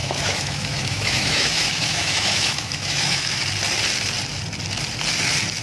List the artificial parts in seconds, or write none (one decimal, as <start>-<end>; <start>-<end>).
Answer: 0.0-3.4